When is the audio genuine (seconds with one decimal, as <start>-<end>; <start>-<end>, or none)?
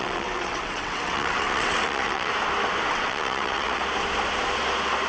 2.3-2.9; 3.8-5.1